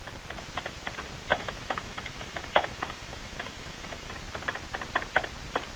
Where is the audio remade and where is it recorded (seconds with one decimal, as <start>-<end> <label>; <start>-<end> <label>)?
0.0-1.3 recorded; 1.3-4.1 remade; 4.1-5.8 recorded